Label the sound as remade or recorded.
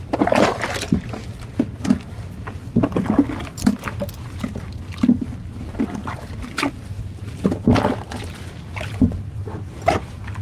recorded